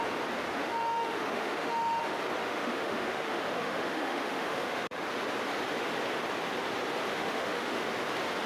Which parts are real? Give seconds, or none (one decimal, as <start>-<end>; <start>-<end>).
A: 0.0-0.6; 2.0-2.4; 5.0-7.1; 7.9-8.5